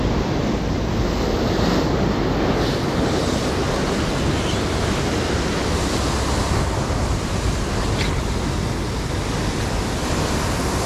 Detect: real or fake real